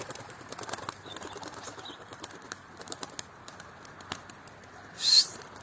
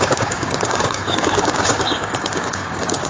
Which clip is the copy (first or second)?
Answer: second